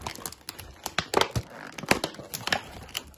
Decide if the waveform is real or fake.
real